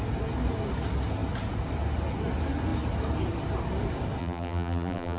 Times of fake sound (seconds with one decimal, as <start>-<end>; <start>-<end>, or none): 4.2-5.2